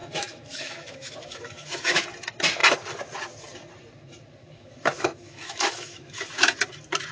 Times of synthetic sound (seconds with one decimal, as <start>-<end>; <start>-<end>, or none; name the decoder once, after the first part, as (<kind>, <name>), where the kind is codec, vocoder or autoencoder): 0.0-2.0 (autoencoder, DAC-VAE); 4.4-6.3